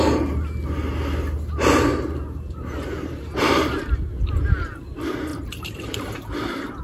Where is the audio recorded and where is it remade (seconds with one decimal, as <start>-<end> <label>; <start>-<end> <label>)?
0.0-1.9 recorded; 1.9-3.8 remade; 3.8-5.3 recorded; 5.3-6.8 remade